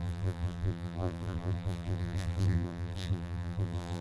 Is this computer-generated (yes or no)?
yes